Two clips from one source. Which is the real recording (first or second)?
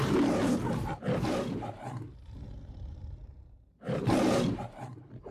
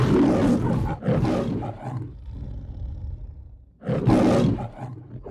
second